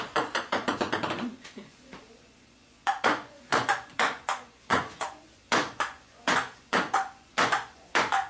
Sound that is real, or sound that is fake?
fake